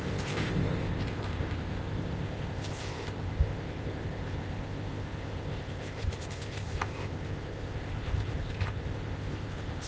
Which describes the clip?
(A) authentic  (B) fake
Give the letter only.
B